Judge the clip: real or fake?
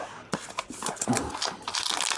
real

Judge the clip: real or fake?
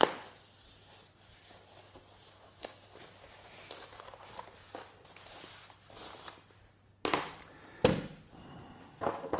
real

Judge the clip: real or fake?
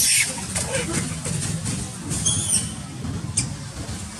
real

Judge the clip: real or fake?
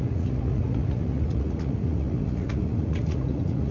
fake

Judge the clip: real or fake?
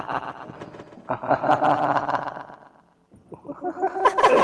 real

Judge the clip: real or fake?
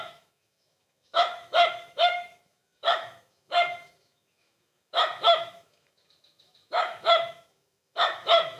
fake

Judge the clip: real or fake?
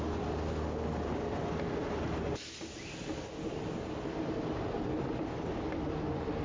real